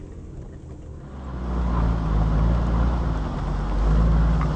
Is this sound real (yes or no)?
yes